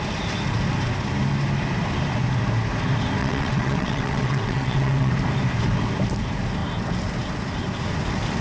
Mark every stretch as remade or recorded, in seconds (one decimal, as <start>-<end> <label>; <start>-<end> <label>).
0.0-3.2 recorded; 3.2-5.1 remade; 5.1-8.4 recorded